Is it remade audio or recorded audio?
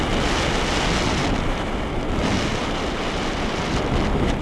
recorded